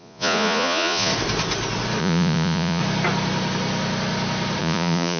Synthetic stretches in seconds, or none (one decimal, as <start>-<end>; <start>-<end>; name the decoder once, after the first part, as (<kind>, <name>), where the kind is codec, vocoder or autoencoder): 0.0-1.1 (vocoder, Vocos); 2.0-2.8; 4.6-5.2